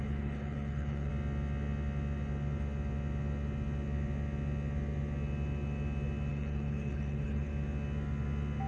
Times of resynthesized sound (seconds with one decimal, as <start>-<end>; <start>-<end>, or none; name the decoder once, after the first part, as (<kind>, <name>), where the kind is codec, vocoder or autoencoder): 0.0-1.1 (codec, HILCodec); 6.3-7.5